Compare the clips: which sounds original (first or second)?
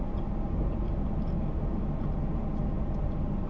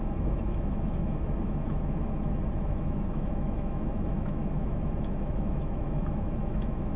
first